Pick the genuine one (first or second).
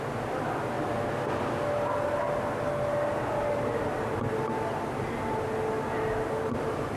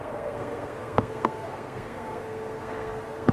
first